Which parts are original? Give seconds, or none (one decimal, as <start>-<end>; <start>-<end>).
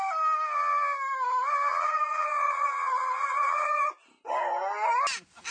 0.0-1.7; 3.9-5.5